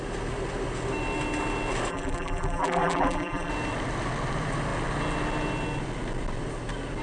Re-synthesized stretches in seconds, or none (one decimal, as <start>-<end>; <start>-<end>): 1.9-3.5